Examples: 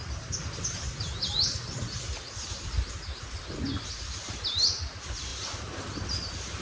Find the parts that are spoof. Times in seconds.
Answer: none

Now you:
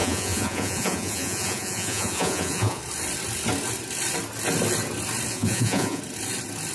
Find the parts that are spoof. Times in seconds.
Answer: 0.0-2.8 (vocoder, Vocos); 5.3-6.0

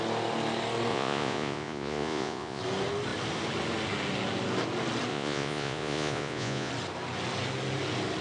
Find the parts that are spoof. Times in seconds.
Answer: 0.9-2.6 (vocoder, Vocos); 5.1-6.7

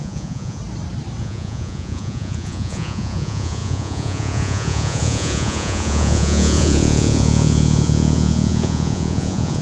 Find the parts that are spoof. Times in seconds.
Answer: 0.0-0.6 (vocoder, Vocos); 1.2-9.6

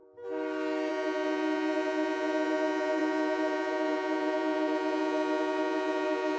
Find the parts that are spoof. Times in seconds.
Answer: 0.9-6.4 (vocoder, Vocos)

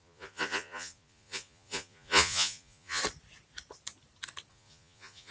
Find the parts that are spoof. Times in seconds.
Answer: 0.0-3.0 (vocoder, Vocos); 4.5-5.3

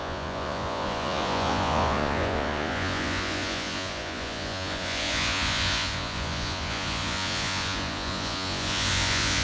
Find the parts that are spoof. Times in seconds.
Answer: 0.0-9.4 (vocoder, Vocos)

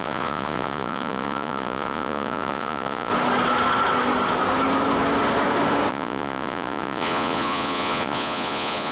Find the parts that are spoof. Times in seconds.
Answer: 0.0-3.1 (vocoder, Vocos); 5.9-8.9